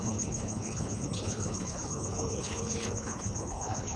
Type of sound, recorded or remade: remade